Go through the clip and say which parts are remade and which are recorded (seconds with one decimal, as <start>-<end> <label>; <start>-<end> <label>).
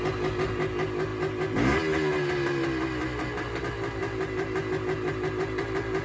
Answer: 0.0-6.0 recorded